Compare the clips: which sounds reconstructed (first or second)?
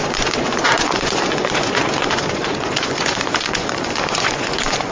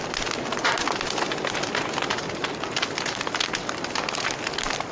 first